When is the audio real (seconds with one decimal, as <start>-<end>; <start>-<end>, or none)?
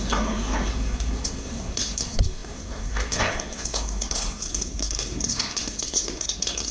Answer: none